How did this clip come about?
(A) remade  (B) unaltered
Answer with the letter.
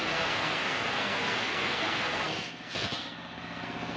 A